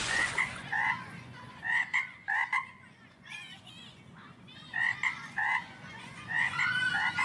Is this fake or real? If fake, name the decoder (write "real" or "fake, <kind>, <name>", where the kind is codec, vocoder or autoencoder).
fake, vocoder, Vocos